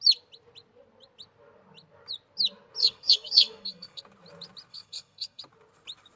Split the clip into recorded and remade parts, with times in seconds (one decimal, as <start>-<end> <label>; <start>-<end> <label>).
0.0-2.8 recorded; 2.8-4.0 remade; 4.0-4.7 recorded; 4.7-5.4 remade; 5.4-6.2 recorded